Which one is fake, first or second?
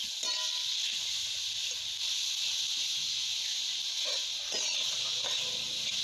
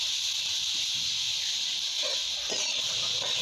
second